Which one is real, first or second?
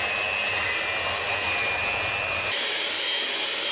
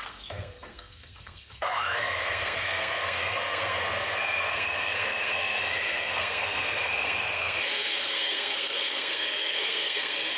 first